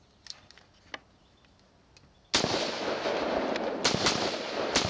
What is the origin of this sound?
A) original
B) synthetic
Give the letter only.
A